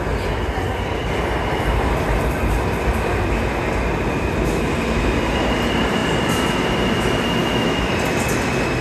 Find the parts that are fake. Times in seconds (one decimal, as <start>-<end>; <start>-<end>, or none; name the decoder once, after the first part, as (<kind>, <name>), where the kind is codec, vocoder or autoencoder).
7.4-7.9 (autoencoder, DAC-VAE)